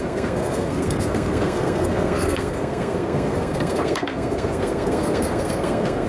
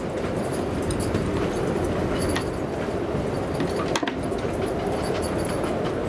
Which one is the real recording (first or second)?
second